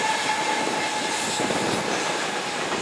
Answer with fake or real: fake